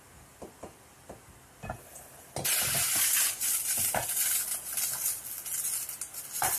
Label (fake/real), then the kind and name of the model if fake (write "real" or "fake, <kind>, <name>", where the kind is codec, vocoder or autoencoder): real